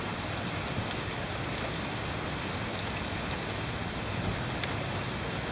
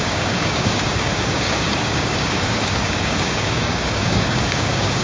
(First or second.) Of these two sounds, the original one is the first